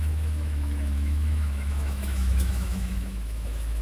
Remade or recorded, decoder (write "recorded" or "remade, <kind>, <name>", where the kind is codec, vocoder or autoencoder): remade, autoencoder, DAC-VAE